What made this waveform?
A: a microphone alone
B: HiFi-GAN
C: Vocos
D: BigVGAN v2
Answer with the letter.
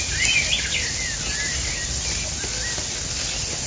A